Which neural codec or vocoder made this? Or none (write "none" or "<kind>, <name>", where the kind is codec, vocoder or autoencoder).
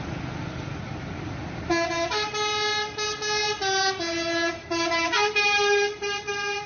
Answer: none